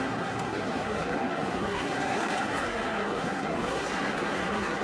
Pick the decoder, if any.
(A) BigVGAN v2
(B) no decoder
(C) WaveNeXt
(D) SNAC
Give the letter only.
D